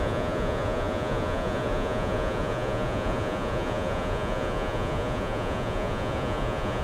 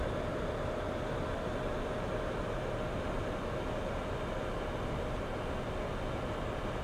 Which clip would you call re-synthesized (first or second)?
first